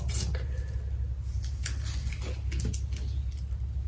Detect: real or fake real